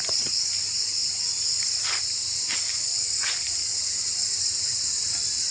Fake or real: real